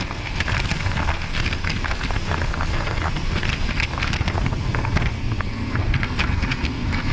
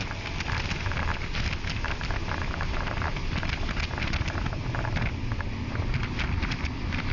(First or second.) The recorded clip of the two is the second